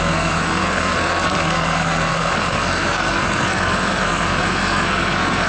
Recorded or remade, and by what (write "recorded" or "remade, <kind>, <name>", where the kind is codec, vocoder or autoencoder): remade, codec, SNAC